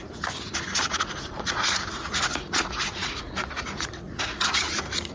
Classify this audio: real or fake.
fake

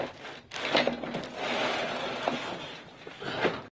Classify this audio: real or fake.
real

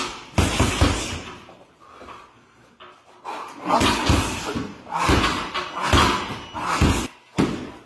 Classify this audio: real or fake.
real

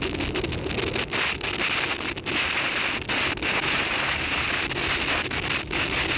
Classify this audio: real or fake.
real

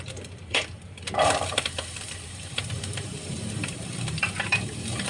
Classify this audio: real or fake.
fake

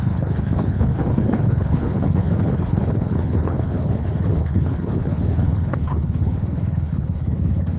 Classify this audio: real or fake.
fake